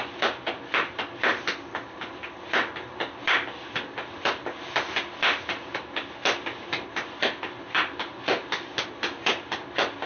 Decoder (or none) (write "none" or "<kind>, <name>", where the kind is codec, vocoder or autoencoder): none